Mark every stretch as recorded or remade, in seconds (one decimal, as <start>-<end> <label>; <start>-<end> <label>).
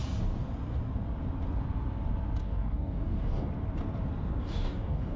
0.0-2.4 recorded; 2.4-3.5 remade; 3.5-4.4 recorded; 4.4-5.2 remade